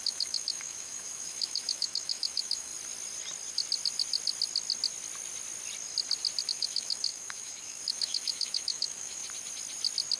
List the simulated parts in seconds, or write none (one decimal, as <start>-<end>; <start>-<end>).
0.0-2.7; 6.4-9.2